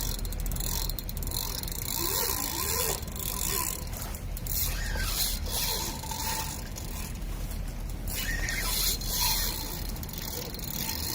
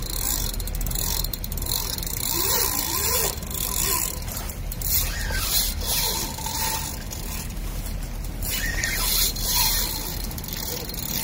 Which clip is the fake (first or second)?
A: second